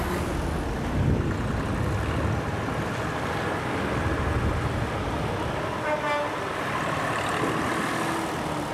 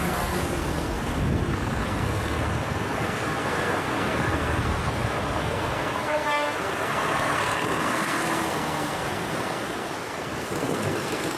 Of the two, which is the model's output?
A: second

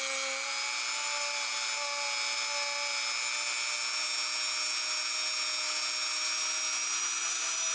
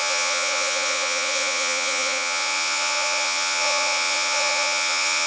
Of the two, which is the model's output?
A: second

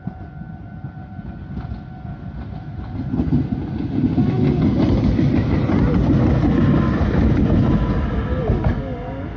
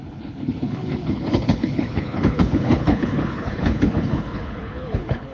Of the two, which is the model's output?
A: second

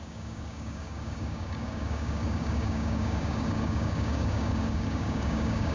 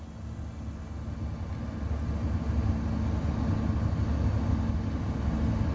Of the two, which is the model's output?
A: first